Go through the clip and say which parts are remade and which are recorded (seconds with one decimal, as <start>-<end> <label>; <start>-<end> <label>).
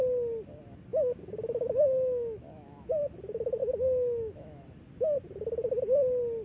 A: 0.0-0.9 recorded; 0.9-2.9 remade; 2.9-3.6 recorded; 3.6-4.6 remade; 4.6-6.4 recorded